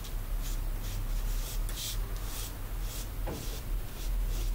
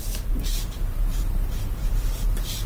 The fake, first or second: second